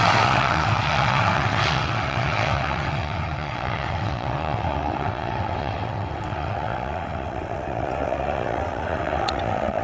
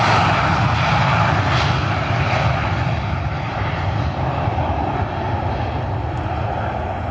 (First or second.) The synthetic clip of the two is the first